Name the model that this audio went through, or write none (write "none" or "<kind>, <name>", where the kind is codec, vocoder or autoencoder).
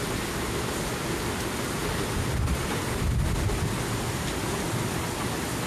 none